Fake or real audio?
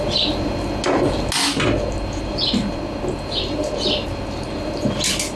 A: real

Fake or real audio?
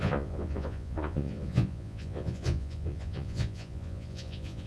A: fake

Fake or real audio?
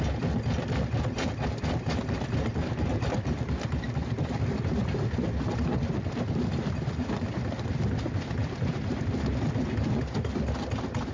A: real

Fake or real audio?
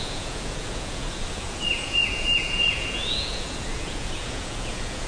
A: fake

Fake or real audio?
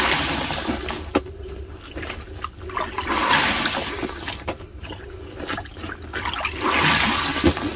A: real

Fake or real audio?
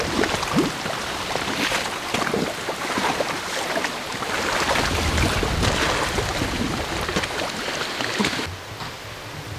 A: real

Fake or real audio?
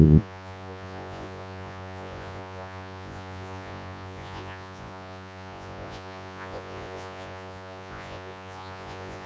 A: fake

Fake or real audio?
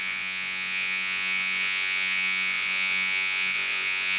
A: fake